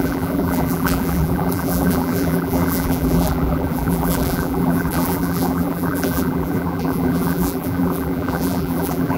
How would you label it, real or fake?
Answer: fake